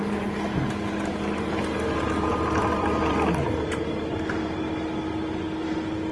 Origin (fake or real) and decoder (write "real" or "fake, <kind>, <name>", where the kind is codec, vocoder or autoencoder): fake, vocoder, BigVGAN v2